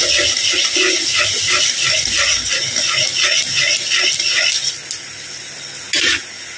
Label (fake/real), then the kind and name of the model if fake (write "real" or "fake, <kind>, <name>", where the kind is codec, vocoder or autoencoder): real